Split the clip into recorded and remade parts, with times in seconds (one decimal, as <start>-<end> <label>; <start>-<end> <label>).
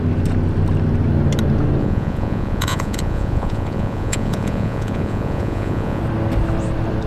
0.0-1.8 recorded; 1.8-6.0 remade; 6.0-7.1 recorded